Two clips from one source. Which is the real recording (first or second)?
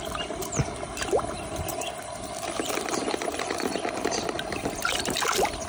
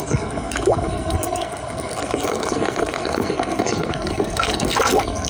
first